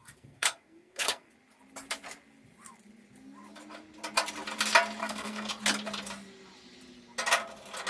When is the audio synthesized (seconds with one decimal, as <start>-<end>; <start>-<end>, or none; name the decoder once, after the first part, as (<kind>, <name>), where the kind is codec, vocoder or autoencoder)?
0.0-1.3 (codec, SNAC); 5.0-5.5